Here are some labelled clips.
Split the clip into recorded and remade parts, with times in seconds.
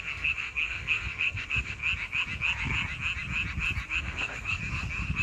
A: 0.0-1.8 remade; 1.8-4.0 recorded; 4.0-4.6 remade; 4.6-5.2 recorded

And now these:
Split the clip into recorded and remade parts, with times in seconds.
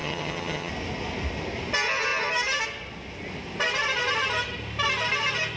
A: 0.0-0.7 remade; 0.7-5.6 recorded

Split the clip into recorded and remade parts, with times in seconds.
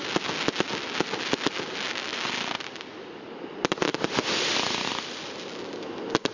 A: 0.0-2.1 recorded; 2.1-4.9 remade; 4.9-6.3 recorded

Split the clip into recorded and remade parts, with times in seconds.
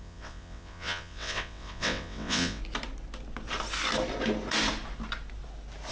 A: 0.0-2.6 remade; 2.6-5.9 recorded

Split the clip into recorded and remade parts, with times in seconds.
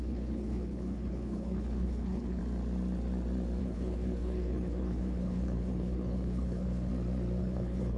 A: 0.0-2.4 remade; 2.4-3.6 recorded; 3.6-6.9 remade; 6.9-7.4 recorded; 7.4-8.0 remade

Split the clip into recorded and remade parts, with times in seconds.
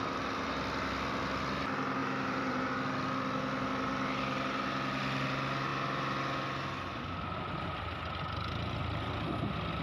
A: 0.0-2.0 recorded; 2.0-2.7 remade; 2.7-9.8 recorded